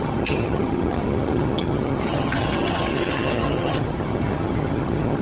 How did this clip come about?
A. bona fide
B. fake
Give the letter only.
B